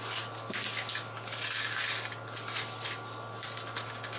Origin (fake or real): real